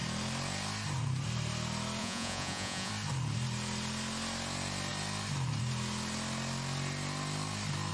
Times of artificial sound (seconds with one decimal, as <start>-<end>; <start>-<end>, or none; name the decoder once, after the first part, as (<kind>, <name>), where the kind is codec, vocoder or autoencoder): 2.0-2.9 (vocoder, Vocos)